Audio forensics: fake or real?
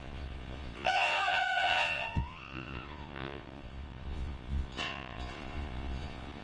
fake